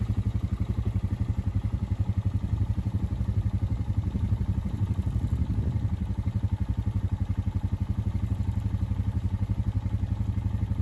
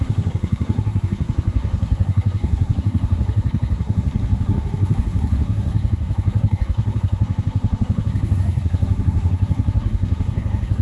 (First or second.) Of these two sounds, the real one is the first